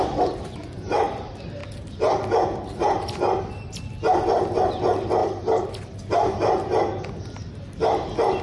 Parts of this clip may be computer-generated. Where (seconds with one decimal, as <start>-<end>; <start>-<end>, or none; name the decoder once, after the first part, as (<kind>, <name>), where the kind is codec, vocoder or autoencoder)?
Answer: 1.6-3.4 (vocoder, BigVGAN v2); 5.2-6.0